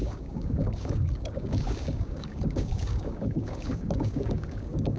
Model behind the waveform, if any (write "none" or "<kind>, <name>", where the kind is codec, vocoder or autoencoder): codec, DAC